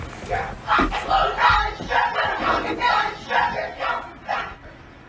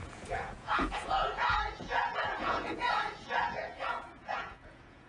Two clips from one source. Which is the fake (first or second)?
second